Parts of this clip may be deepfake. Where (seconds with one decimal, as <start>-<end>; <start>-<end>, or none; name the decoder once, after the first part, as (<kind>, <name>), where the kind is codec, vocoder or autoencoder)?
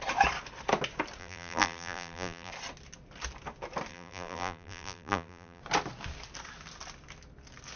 1.2-2.5 (vocoder, BigVGAN v2); 3.9-5.6